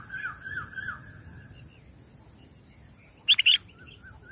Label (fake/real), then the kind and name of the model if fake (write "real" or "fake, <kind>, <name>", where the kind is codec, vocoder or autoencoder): real